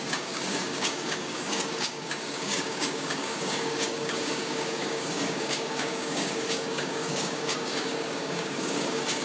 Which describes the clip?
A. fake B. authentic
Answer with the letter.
A